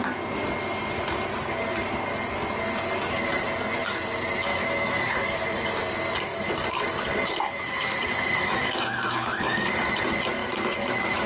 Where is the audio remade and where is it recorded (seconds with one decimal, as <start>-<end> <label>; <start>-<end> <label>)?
0.0-4.5 recorded; 4.5-5.7 remade; 5.7-6.3 recorded; 6.3-10.0 remade; 10.0-10.4 recorded; 10.4-11.3 remade